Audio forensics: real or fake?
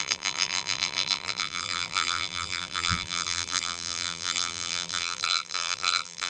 fake